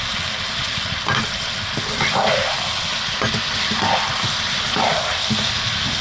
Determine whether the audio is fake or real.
real